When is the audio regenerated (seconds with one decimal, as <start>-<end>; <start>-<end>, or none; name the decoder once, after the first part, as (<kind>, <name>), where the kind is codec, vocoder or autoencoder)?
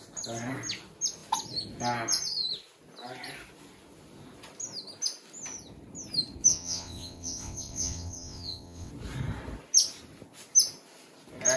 6.5-8.9 (vocoder, WaveNeXt)